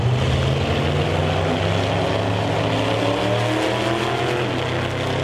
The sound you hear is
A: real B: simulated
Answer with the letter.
A